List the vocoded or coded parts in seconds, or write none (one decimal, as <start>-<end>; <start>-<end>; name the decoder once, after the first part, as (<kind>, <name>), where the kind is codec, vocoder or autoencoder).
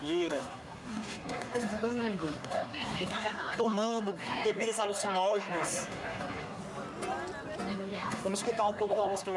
0.0-6.6 (codec, SNAC); 7.7-9.4